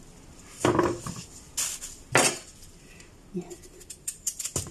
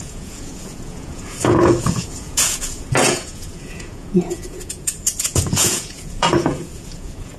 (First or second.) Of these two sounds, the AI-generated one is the second